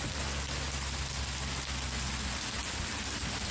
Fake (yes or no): no